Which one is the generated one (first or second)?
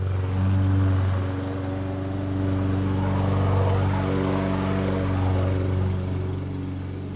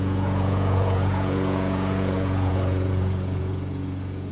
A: second